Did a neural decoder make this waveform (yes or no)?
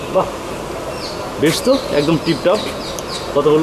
no